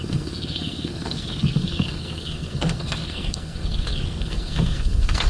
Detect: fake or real fake